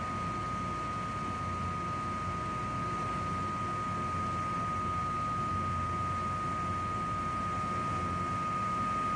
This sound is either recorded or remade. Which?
recorded